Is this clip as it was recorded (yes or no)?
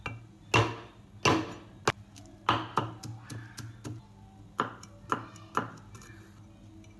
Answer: yes